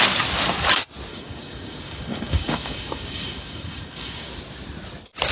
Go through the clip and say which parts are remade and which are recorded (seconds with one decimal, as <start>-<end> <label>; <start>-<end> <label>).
0.0-1.1 recorded; 1.1-4.3 remade; 4.3-5.3 recorded